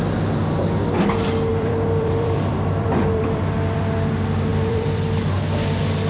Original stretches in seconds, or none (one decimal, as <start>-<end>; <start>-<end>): 0.0-1.5; 3.8-4.5; 5.4-6.1